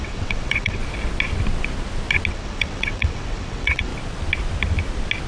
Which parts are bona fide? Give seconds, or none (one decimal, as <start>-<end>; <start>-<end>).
0.8-2.3; 3.9-5.3